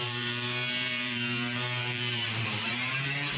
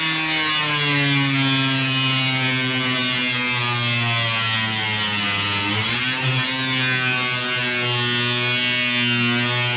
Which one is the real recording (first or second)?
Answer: second